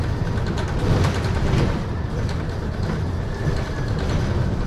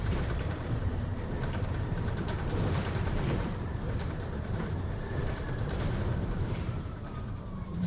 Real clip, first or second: first